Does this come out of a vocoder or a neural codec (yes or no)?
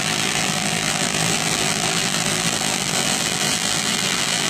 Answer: yes